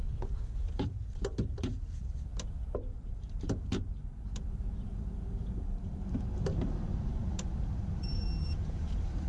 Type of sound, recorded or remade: remade